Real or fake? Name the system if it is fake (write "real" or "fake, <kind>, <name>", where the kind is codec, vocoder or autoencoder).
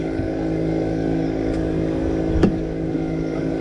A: fake, codec, DAC